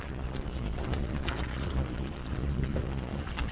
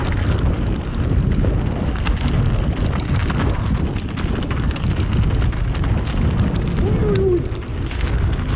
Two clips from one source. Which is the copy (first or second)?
first